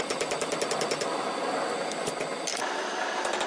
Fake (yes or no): no